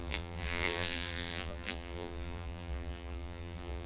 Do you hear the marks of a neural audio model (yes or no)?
yes